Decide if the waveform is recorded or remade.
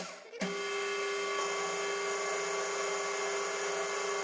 recorded